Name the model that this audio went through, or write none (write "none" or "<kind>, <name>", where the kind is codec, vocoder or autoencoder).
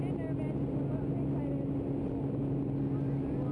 none